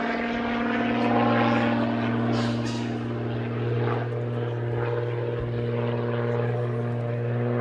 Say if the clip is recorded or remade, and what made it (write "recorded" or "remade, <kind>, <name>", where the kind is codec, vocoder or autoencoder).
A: recorded